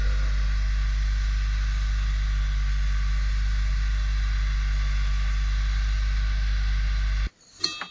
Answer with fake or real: real